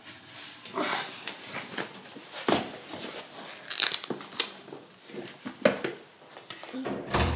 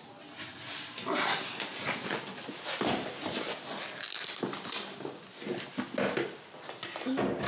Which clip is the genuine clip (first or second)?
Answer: second